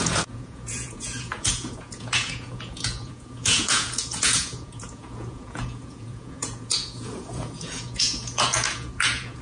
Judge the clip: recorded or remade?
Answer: remade